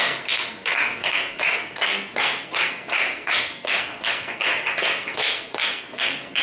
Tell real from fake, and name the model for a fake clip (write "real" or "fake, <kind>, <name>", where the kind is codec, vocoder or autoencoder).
fake, codec, SNAC